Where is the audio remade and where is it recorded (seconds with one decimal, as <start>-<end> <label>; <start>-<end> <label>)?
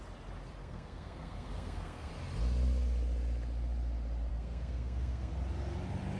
0.0-0.6 recorded; 0.6-2.1 remade; 2.1-4.3 recorded; 4.3-5.3 remade; 5.3-6.2 recorded